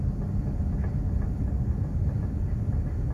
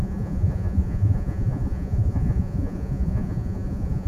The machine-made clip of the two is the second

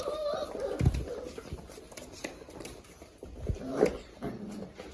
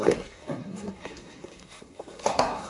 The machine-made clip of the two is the second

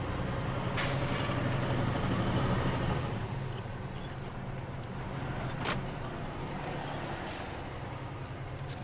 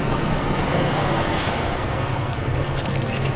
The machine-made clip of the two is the second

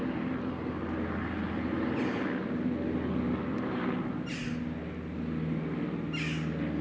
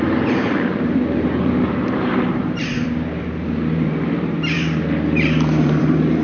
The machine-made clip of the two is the second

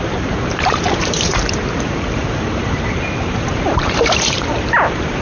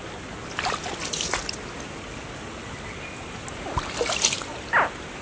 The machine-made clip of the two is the first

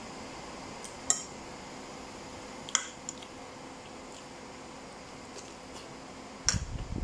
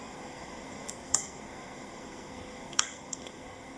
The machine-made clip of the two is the second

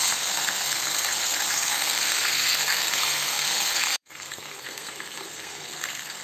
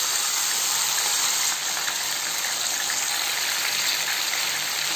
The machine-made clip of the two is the first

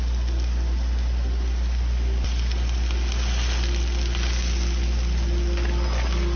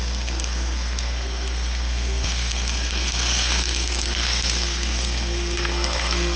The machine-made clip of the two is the second